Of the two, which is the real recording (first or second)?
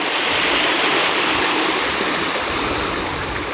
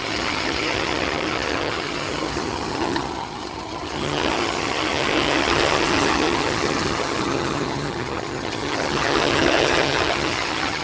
first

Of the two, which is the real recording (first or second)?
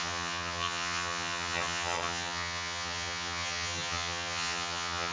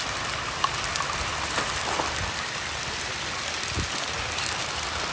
second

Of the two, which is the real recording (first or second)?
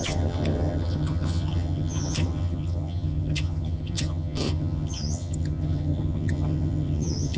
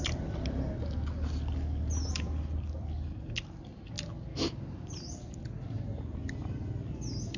second